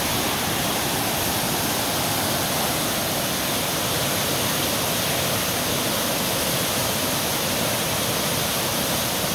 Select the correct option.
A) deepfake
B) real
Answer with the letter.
B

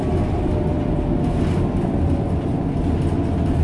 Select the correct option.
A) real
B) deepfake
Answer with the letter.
A